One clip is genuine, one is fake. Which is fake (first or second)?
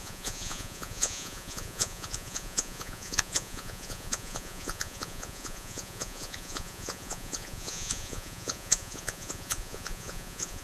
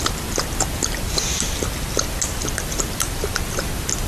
first